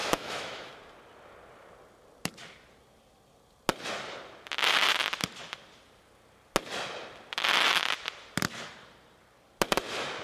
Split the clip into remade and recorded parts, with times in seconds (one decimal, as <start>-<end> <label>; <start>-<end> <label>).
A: 0.0-0.7 remade; 0.7-10.2 recorded